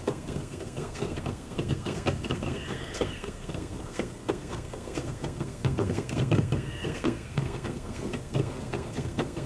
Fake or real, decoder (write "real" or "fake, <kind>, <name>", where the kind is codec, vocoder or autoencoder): fake, codec, SNAC